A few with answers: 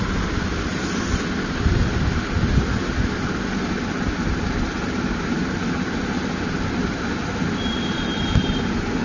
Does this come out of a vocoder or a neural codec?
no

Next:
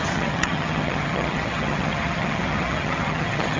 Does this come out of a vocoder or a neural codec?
yes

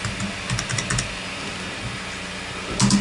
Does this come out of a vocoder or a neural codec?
no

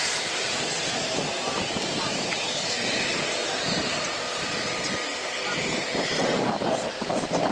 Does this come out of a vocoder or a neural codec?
yes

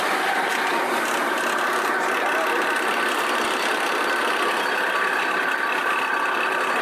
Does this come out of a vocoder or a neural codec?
no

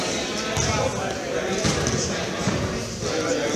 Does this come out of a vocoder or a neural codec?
no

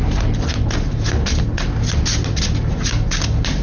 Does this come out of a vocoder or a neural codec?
no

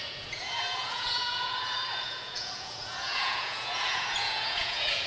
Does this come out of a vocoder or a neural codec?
yes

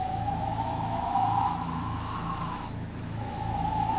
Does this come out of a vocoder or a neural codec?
yes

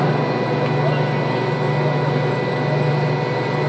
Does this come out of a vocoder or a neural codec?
no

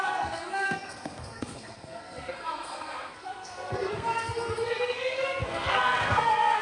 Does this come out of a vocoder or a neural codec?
yes